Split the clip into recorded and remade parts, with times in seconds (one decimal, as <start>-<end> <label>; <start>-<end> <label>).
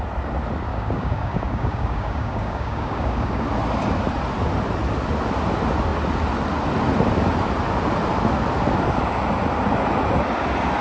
0.0-0.7 recorded; 0.7-3.4 remade; 3.4-10.8 recorded